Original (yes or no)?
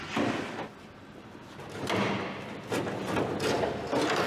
yes